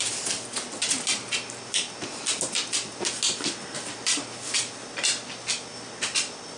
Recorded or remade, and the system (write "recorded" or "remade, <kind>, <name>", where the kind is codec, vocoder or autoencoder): recorded